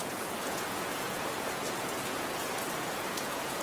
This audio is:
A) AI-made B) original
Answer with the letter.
A